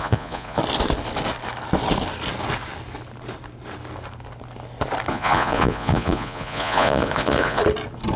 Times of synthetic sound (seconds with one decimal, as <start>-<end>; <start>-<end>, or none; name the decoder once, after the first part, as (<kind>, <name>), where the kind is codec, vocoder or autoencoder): 0.0-0.6 (vocoder, Vocos); 5.1-7.6